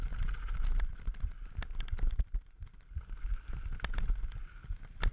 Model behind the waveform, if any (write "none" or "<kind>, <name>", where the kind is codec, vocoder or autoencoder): none